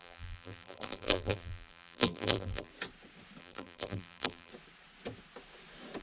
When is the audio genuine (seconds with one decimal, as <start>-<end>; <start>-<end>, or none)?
2.7-3.4; 4.5-6.0